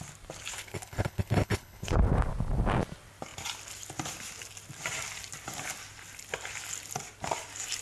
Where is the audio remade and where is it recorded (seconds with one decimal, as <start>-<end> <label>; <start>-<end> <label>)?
0.0-0.5 recorded; 0.5-2.0 remade; 2.0-7.8 recorded